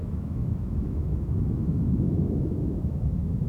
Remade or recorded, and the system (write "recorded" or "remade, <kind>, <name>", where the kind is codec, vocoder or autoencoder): remade, autoencoder, DAC-VAE